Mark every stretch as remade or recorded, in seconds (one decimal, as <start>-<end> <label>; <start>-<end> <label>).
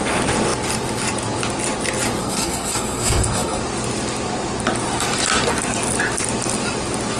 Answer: 0.0-2.2 recorded; 2.2-3.6 remade; 3.6-7.2 recorded